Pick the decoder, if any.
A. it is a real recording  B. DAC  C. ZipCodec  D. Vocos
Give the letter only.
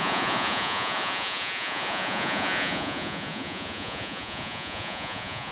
D